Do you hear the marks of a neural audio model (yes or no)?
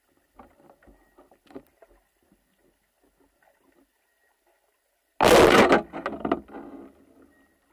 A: no